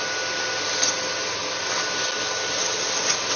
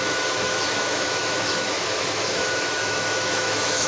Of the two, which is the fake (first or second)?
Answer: second